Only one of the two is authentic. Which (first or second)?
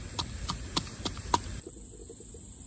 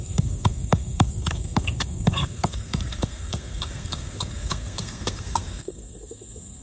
first